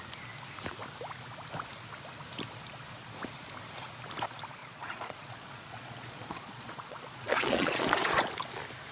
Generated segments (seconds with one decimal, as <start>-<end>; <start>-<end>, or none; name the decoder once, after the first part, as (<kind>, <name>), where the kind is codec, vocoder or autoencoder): 4.6-8.2 (vocoder, Vocos)